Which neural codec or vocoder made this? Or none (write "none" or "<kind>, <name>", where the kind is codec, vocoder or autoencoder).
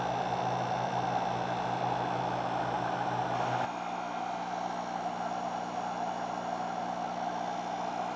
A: none